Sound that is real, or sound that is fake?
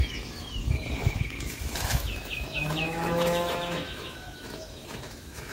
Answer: fake